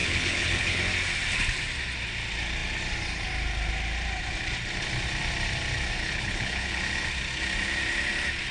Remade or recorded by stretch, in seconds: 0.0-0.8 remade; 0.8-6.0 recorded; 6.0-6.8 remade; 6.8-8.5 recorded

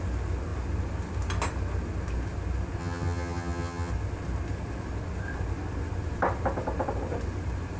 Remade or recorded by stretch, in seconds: 0.0-2.8 recorded; 2.8-3.9 remade; 3.9-7.8 recorded

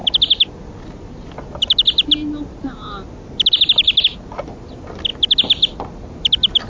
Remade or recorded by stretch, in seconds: 0.0-6.7 recorded

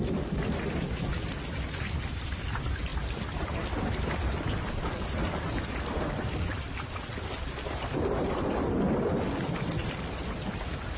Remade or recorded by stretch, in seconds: 0.0-11.0 recorded